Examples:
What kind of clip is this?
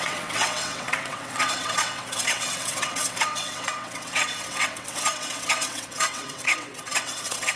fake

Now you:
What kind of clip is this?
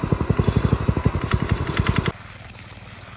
real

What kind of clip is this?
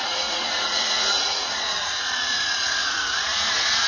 fake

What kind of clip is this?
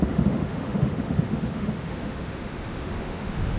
fake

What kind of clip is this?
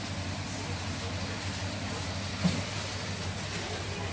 real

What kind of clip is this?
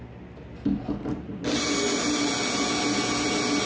real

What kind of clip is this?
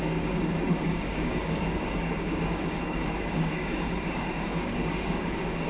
fake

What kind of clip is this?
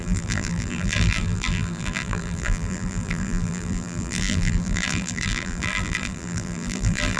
fake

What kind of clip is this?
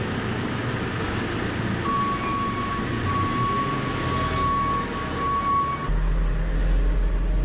real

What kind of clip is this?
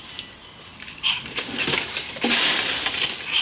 real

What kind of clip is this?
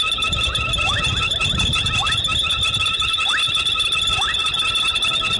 real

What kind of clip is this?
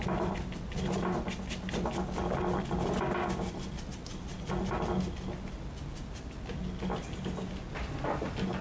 real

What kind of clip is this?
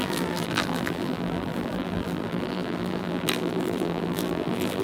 fake